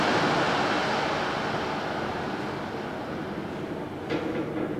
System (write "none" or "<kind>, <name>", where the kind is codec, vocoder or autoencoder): none